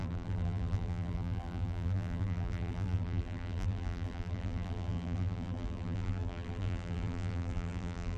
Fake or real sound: fake